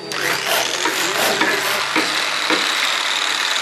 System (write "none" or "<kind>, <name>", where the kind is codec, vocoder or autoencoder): none